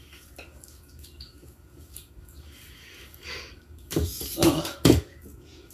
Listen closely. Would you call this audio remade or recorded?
remade